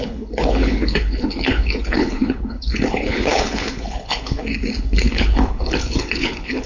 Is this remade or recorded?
remade